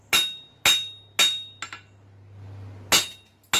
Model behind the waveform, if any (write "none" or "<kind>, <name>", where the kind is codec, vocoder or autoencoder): none